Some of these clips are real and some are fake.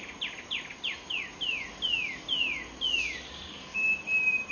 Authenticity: real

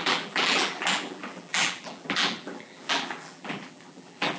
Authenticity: fake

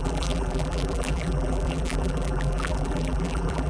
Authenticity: fake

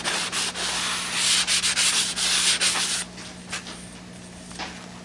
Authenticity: real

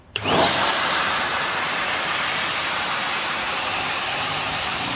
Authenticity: fake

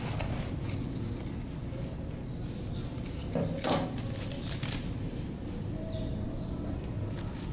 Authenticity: real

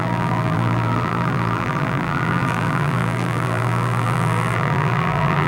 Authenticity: fake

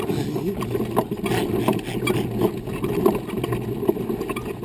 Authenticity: real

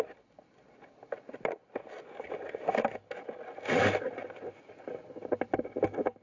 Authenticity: real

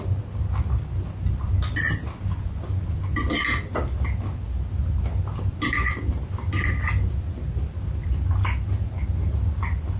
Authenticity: real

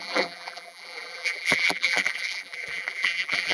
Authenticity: fake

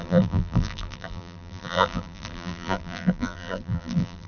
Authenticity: fake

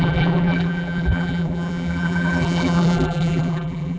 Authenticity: fake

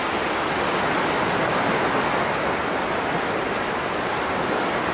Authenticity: real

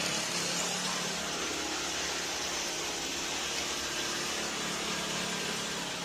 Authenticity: real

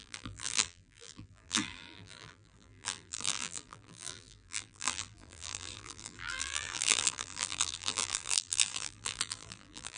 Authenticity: fake